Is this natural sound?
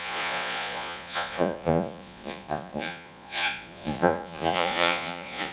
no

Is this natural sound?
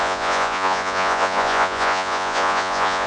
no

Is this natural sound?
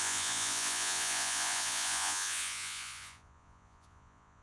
no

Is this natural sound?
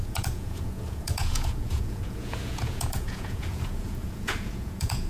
no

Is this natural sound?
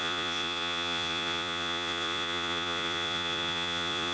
no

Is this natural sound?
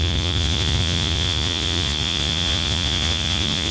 no